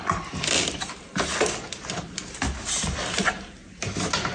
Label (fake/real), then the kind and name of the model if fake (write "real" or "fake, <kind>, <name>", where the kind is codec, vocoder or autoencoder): real